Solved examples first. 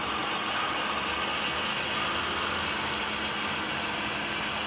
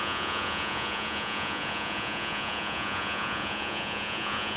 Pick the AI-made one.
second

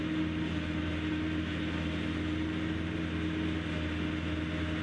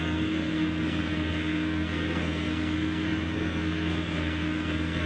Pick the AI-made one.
second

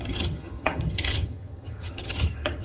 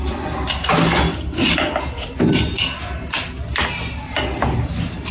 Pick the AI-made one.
first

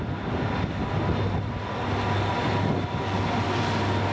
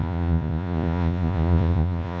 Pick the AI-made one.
second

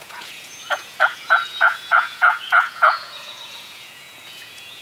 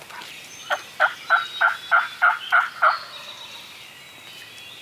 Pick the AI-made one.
first